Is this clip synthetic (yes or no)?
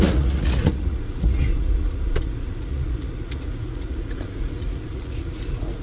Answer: yes